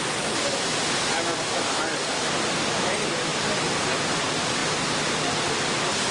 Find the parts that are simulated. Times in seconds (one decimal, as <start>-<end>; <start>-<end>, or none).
none